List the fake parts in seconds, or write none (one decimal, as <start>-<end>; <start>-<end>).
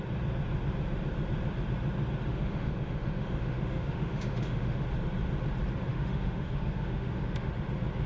2.3-4.8; 5.9-7.5